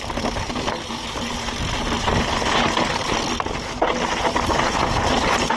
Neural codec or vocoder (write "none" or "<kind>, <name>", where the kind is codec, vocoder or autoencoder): none